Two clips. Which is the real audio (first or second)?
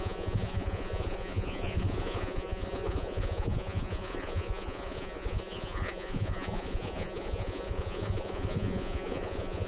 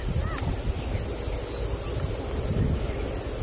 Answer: second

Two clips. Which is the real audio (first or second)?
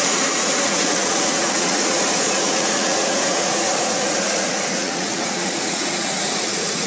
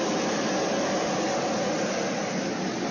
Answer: second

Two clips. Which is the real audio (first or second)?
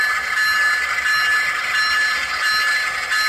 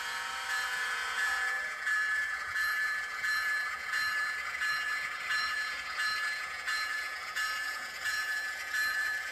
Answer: first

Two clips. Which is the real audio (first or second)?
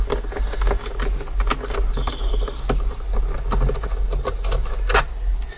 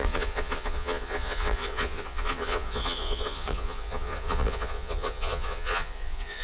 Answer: first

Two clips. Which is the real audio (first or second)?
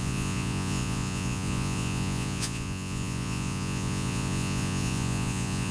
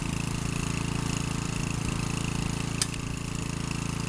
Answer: second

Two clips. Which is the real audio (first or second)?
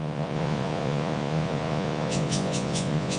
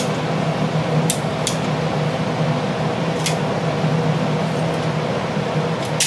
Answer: second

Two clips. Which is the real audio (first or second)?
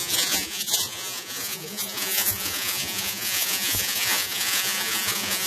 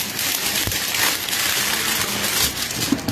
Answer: second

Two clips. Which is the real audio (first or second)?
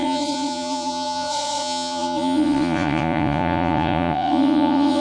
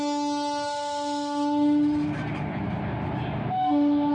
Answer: second